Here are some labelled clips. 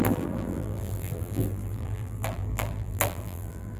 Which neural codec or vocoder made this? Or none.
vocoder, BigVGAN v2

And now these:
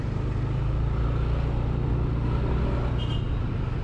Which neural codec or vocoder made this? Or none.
none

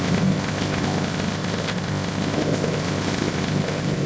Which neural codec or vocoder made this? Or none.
codec, ZipCodec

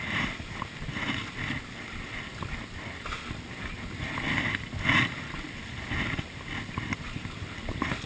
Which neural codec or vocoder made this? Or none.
none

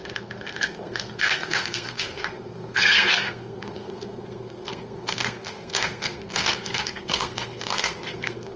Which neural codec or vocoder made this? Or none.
codec, SNAC